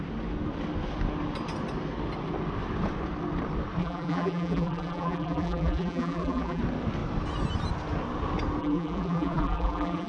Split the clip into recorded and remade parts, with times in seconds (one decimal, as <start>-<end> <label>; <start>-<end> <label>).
0.0-3.8 recorded; 3.8-6.6 remade; 6.6-8.6 recorded; 8.6-10.1 remade